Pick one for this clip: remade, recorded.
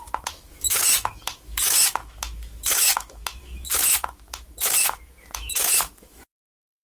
remade